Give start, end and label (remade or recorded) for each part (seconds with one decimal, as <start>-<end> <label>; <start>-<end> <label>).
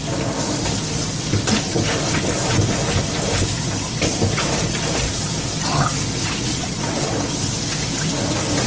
0.0-6.5 recorded; 6.5-7.1 remade; 7.1-8.7 recorded